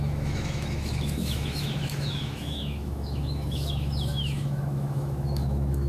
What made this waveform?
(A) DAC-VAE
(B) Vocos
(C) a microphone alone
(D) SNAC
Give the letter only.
A